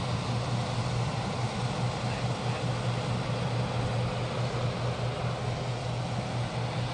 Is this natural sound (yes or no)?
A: yes